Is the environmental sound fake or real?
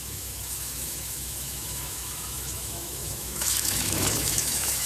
fake